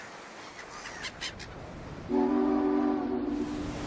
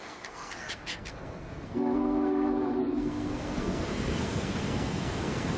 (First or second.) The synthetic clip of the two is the second